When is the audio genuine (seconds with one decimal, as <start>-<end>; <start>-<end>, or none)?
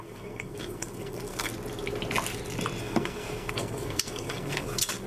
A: 1.5-2.8